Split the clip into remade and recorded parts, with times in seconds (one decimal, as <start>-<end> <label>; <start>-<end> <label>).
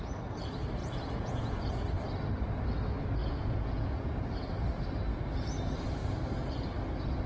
0.0-0.8 recorded; 0.8-1.7 remade; 1.7-3.2 recorded; 3.2-4.1 remade; 4.1-7.3 recorded